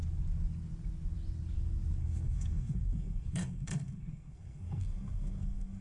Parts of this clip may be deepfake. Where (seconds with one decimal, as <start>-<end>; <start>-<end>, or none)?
2.0-5.8